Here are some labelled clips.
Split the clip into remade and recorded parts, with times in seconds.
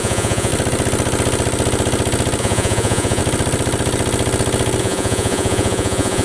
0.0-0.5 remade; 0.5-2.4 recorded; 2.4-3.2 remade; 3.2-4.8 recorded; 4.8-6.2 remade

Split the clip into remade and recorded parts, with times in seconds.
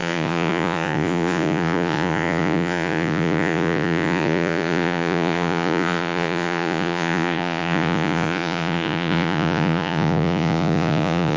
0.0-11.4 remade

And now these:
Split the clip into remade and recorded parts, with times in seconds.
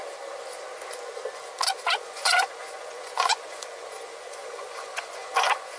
0.0-2.0 recorded; 2.0-5.8 remade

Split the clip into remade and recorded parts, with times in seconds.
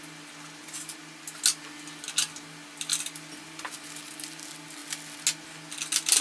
0.0-6.2 recorded